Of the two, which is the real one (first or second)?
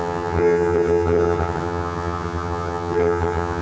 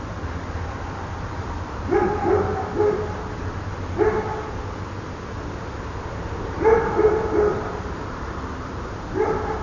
second